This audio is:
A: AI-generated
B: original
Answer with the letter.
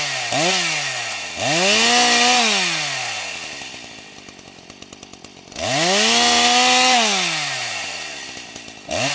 B